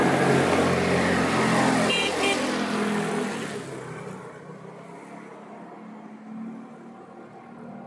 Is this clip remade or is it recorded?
recorded